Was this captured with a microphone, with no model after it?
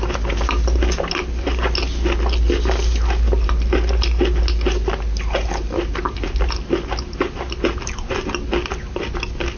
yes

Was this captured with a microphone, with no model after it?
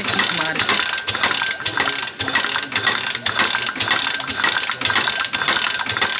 yes